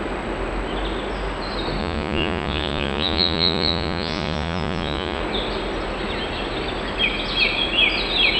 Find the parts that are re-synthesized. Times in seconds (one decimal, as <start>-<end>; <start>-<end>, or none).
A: 1.8-5.2